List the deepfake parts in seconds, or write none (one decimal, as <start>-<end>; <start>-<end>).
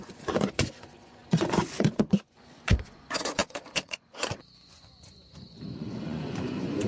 0.0-6.9